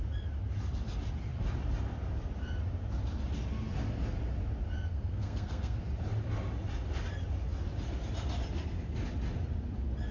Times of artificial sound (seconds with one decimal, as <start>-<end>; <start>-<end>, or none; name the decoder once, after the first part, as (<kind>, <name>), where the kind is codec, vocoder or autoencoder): 4.9-5.8 (codec, SNAC)